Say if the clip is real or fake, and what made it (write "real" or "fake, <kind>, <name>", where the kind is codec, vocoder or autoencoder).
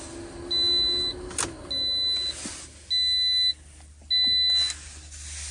real